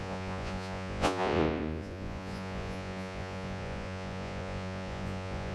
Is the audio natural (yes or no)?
no